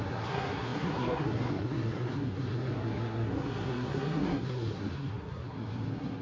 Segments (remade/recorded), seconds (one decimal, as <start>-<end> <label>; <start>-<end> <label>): 0.0-6.2 remade